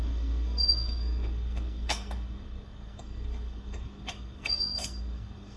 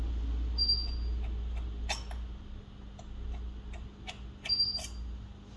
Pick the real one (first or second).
second